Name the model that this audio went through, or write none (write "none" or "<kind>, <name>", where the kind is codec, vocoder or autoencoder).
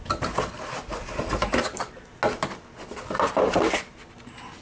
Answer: none